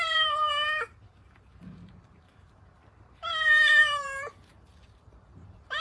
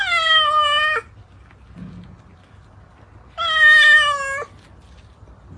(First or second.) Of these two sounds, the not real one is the first